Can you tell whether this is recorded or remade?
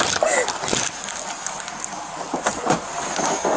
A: recorded